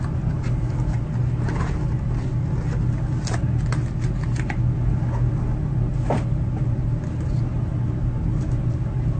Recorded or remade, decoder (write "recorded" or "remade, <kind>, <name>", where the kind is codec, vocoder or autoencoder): recorded